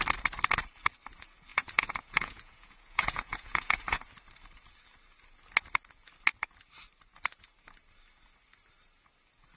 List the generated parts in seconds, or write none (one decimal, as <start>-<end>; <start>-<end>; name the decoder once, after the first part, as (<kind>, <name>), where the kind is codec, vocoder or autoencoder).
1.5-4.0 (vocoder, Vocos)